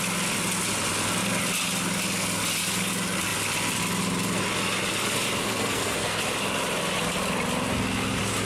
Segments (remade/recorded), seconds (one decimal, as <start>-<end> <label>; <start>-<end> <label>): 0.0-5.4 recorded; 5.4-6.2 remade; 6.2-8.5 recorded